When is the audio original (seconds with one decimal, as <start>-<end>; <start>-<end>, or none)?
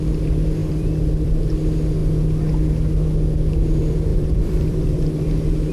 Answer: 0.0-0.6; 1.4-4.1; 5.1-5.7